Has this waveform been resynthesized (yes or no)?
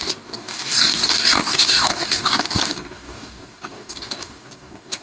yes